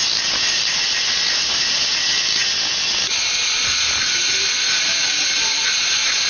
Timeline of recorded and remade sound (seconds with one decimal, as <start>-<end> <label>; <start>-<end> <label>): 0.0-6.3 recorded